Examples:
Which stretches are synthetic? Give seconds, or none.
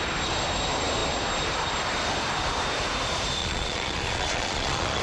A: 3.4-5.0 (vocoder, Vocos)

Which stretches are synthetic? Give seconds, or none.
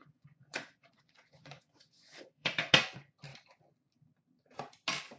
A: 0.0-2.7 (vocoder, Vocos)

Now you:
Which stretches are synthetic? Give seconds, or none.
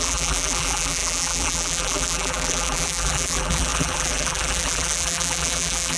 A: 0.0-6.0 (vocoder, BigVGAN v2)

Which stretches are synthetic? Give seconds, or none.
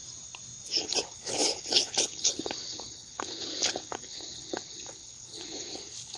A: 0.8-6.2 (codec, HILCodec)